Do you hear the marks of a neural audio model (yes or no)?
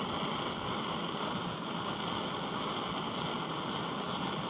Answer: no